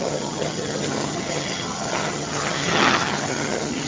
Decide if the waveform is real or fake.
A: fake